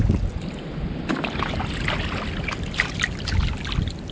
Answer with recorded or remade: recorded